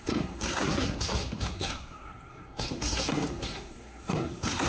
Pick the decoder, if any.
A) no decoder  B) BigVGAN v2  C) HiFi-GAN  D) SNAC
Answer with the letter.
D